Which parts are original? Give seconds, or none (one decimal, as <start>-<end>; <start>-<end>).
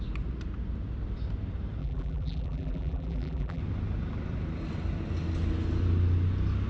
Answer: 0.0-1.8; 3.6-6.7